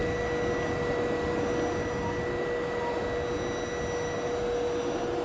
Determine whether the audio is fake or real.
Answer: real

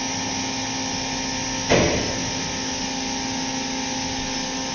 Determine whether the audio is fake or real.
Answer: real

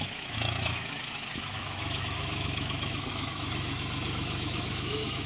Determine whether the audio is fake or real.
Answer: fake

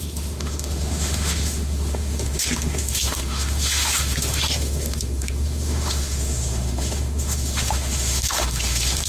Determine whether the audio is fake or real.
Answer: fake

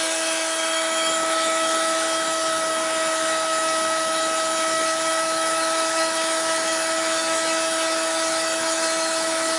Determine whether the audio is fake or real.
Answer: fake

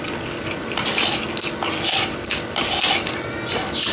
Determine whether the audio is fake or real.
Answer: real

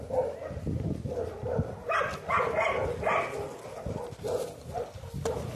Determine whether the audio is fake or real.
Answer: real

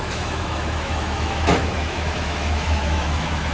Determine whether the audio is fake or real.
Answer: fake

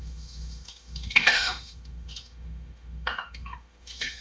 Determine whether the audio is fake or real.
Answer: fake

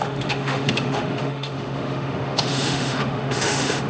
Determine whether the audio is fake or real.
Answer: fake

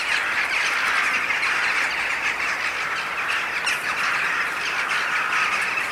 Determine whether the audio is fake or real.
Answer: real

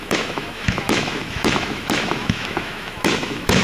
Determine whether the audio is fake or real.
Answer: fake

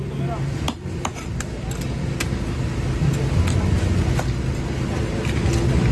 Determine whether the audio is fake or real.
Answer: real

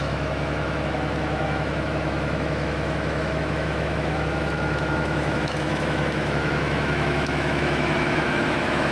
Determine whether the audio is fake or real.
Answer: fake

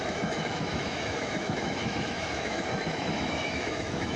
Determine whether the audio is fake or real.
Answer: fake